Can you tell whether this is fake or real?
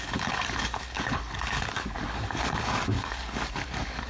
fake